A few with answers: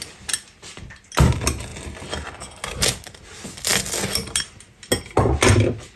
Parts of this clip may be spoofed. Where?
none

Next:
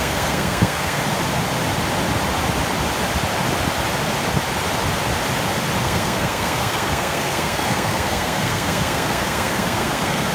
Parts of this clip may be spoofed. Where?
0.0-1.0 (codec, SNAC); 5.8-10.3

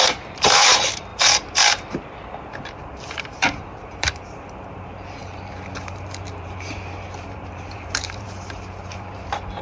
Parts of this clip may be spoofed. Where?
0.0-9.6 (vocoder, BigVGAN v2)

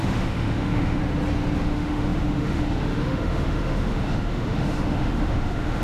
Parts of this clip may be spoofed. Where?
0.0-1.0 (autoencoder, DAC-VAE); 1.6-5.8

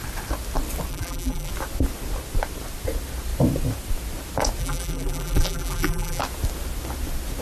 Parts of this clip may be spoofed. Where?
0.9-1.5 (vocoder, BigVGAN v2); 4.6-6.2

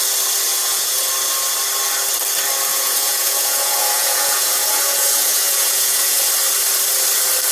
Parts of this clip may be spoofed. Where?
0.5-1.1 (vocoder, Vocos); 2.7-6.3

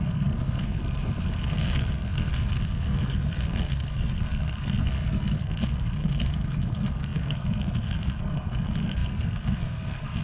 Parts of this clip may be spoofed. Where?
0.0-0.8 (codec, SNAC); 1.5-10.2

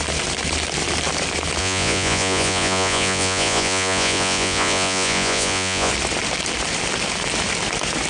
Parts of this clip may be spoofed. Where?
1.6-5.9 (vocoder, Vocos)